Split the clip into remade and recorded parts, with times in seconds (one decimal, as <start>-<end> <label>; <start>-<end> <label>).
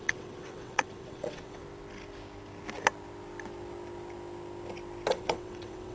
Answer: 0.0-1.6 remade; 1.6-5.1 recorded; 5.1-5.9 remade